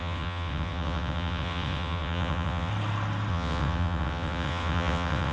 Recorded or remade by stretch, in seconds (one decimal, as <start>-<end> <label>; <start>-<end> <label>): 0.0-2.7 remade; 2.7-3.3 recorded; 3.3-5.3 remade